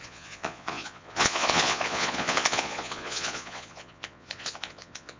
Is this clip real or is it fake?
fake